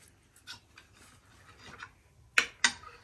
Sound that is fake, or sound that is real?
real